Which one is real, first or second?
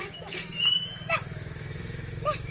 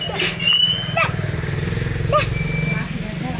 second